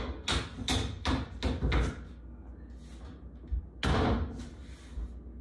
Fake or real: real